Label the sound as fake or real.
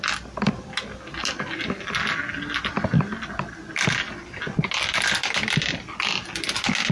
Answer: real